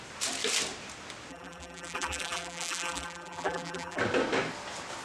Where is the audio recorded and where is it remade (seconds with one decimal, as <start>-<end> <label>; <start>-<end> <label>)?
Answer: 0.0-1.3 recorded; 1.3-4.0 remade; 4.0-5.0 recorded